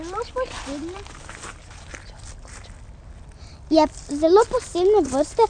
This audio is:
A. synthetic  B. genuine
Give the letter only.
B